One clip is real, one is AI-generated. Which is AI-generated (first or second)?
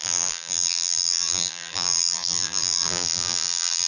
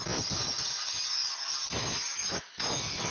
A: first